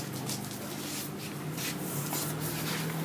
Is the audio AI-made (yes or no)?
no